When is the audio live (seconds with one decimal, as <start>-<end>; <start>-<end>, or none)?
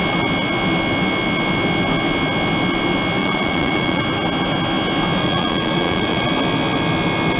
0.0-3.2; 4.0-5.2; 6.3-7.4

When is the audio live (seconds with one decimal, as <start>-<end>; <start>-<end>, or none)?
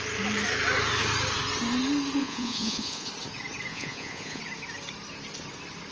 0.0-2.2; 3.1-3.7; 4.4-5.9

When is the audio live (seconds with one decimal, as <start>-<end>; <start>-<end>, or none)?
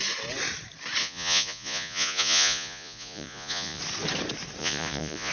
0.0-1.0; 3.8-4.6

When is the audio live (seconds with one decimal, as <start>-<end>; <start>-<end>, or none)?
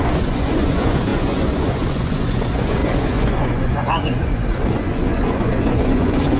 none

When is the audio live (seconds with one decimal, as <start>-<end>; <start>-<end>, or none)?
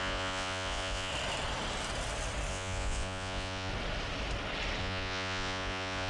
1.1-2.5; 3.7-4.8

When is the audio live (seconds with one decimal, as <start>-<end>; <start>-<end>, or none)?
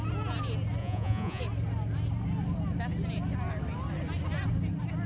0.0-0.8; 1.4-5.1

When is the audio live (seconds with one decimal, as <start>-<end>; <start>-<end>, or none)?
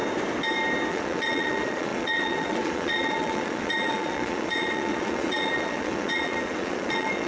0.0-0.9